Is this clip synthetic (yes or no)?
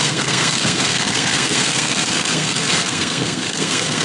yes